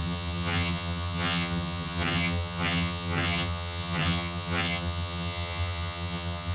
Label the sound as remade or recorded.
remade